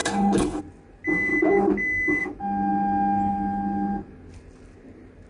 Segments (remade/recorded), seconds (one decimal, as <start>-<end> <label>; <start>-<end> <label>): 0.0-0.6 remade; 0.6-5.3 recorded